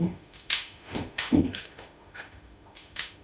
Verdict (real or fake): fake